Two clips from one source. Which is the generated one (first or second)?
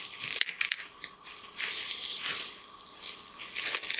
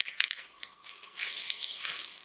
second